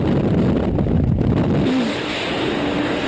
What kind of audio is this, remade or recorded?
recorded